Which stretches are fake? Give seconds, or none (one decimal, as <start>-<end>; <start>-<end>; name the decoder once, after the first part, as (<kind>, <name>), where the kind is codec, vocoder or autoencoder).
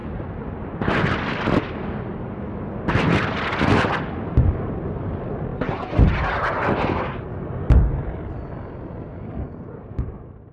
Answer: none